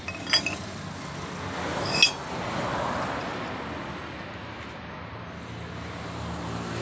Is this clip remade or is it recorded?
recorded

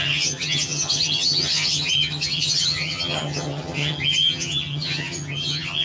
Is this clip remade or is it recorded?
remade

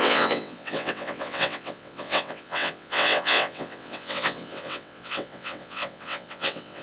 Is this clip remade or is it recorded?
remade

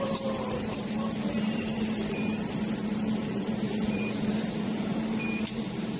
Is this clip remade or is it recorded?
remade